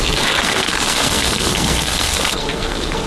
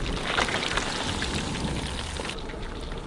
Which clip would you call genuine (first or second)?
second